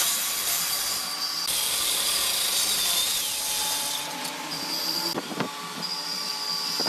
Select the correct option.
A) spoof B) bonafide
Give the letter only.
A